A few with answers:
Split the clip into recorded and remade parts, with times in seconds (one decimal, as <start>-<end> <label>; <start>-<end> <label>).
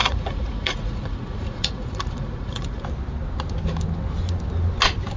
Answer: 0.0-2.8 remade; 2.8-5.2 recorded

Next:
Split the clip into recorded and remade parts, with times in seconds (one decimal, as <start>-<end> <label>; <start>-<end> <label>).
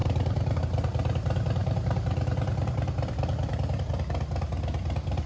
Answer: 0.0-0.6 remade; 0.6-1.6 recorded; 1.6-3.9 remade; 3.9-5.3 recorded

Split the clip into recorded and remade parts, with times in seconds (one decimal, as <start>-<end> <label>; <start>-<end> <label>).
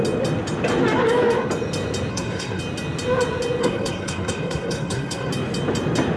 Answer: 0.0-2.1 recorded; 2.1-2.6 remade; 2.6-3.6 recorded; 3.6-5.3 remade; 5.3-6.2 recorded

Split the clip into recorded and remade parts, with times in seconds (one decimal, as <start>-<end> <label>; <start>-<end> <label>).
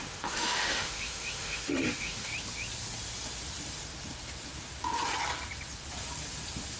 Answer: 0.0-2.3 remade; 2.3-6.8 recorded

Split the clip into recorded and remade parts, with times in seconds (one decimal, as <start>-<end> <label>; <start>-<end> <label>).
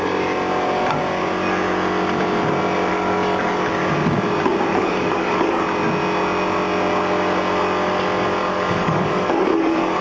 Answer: 0.0-2.9 recorded; 2.9-3.7 remade; 3.7-4.7 recorded; 4.7-5.6 remade; 5.6-8.4 recorded; 8.4-10.0 remade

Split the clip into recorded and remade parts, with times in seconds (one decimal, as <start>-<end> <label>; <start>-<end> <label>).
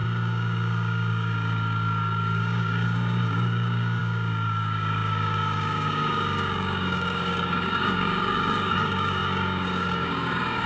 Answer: 0.0-10.7 remade